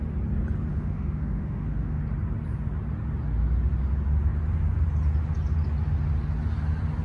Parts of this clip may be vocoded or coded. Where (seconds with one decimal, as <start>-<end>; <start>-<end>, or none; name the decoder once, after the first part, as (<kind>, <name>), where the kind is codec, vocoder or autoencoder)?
0.7-2.0 (autoencoder, DAC-VAE)